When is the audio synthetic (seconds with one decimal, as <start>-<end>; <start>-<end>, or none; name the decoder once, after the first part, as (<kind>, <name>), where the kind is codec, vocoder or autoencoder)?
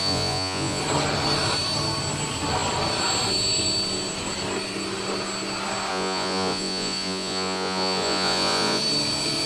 0.0-0.8 (vocoder, Vocos); 5.9-8.8